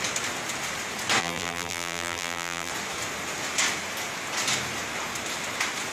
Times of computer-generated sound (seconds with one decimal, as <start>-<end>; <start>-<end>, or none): 1.2-2.7

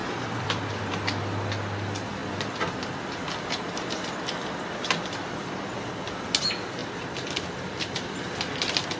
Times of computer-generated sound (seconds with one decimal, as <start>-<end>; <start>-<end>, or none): 0.0-0.9; 2.2-5.7; 6.8-9.0

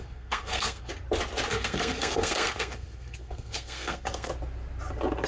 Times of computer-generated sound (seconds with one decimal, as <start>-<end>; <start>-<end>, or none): 0.0-0.9; 1.5-4.3